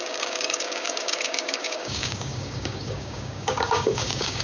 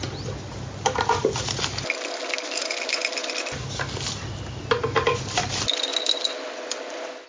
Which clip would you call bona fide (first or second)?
second